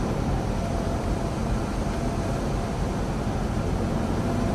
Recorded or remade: remade